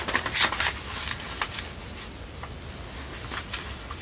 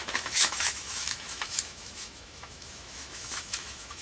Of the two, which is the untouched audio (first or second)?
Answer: first